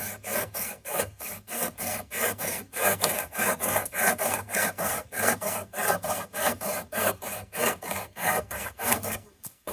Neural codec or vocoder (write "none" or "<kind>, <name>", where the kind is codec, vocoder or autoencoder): codec, SNAC